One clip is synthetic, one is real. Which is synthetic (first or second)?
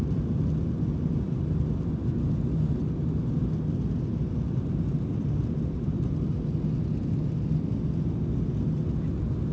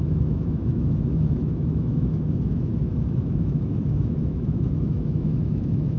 second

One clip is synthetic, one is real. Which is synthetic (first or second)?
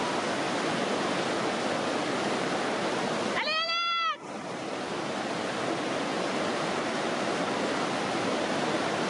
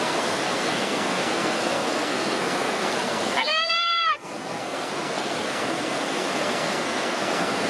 second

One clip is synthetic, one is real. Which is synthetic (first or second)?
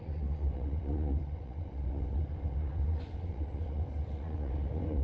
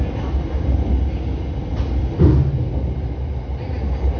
first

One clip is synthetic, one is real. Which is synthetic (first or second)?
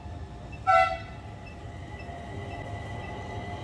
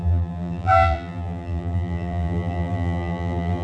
second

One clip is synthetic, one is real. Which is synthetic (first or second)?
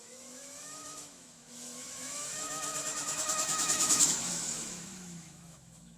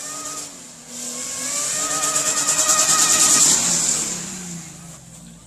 first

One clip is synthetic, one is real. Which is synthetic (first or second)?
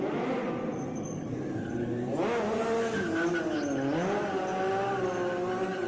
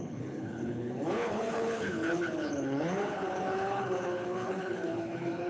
second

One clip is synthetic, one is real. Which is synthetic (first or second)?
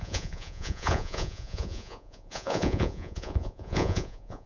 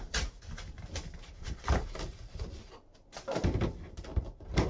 first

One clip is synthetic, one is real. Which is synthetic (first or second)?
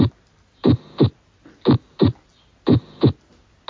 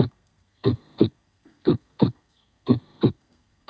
second